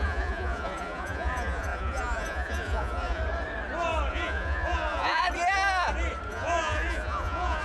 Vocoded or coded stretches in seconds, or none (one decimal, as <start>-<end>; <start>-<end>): 0.0-3.2; 4.1-5.2; 6.3-7.6